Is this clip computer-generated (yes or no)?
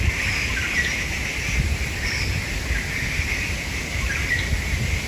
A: no